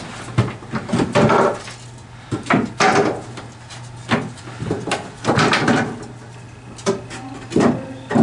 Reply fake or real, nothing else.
real